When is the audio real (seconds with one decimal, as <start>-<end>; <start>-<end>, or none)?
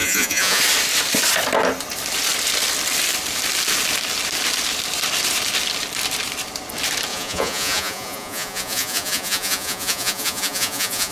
0.6-7.1